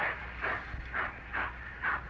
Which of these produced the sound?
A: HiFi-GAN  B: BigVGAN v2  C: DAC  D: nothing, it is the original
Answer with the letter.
D